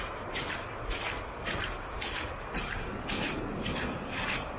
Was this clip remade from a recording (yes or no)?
no